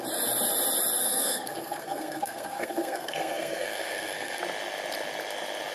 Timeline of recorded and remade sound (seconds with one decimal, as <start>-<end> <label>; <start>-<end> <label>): 0.0-1.0 recorded; 1.0-4.4 remade; 4.4-5.7 recorded